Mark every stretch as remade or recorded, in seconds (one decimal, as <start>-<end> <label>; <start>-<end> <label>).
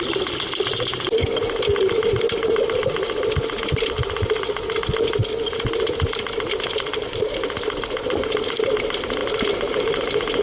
0.0-10.4 recorded